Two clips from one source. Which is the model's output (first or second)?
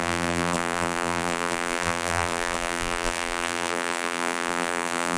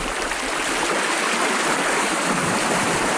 first